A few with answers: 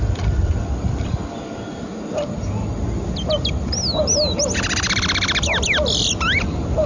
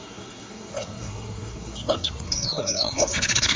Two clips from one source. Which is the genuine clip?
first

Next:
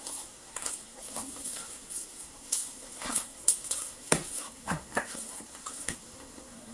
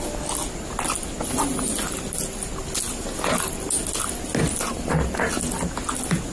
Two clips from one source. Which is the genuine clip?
second